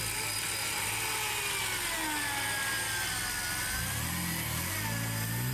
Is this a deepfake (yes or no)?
no